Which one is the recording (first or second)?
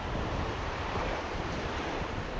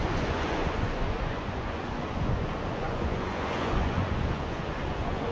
first